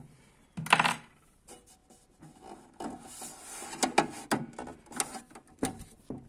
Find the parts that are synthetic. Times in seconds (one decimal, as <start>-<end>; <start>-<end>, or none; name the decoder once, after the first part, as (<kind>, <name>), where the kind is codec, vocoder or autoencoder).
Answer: none